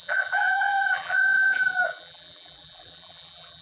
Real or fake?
fake